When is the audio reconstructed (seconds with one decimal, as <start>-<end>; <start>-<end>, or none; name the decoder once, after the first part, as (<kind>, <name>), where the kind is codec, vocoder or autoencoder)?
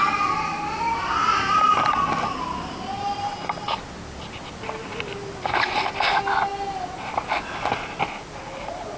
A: none